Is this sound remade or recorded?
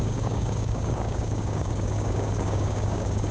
remade